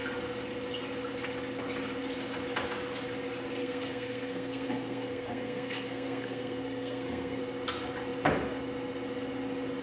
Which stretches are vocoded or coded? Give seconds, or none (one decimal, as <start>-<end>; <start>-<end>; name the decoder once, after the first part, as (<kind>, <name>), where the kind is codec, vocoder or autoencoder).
3.6-7.4 (codec, SNAC)